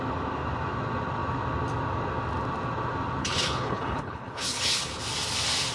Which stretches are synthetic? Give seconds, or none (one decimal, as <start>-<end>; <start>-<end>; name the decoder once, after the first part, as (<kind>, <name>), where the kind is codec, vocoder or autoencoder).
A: 3.2-4.9 (codec, HILCodec)